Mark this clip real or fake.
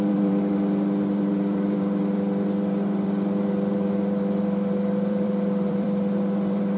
fake